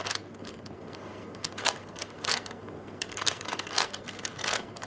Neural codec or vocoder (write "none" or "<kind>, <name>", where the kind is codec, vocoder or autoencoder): codec, SNAC